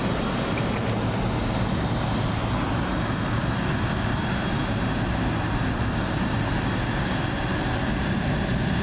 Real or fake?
real